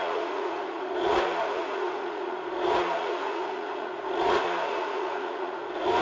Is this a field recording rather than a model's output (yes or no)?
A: no